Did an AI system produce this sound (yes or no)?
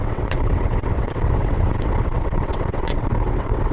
yes